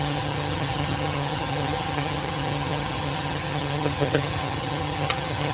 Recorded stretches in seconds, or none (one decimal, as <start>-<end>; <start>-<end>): none